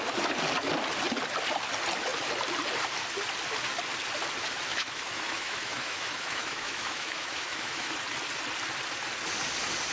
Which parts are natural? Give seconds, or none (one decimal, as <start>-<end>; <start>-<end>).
0.0-4.7; 7.9-9.9

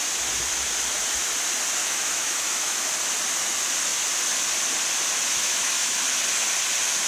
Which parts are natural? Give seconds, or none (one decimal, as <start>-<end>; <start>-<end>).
0.0-1.8; 2.9-5.3; 6.0-7.1

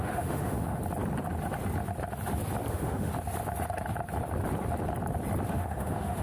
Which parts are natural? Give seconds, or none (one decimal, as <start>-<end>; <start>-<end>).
0.8-2.7; 3.1-5.5

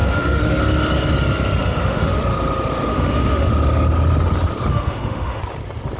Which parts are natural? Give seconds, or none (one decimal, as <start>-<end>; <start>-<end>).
0.6-1.6; 2.2-2.9; 3.5-4.7; 5.4-6.0

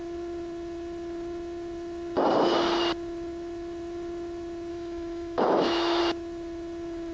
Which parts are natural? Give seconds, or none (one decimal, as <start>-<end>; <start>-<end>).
0.0-4.7; 6.0-7.1

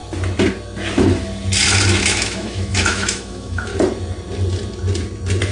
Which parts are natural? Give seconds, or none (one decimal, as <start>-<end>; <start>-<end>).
0.0-2.0; 3.7-5.5